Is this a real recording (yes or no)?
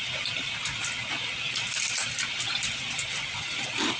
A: yes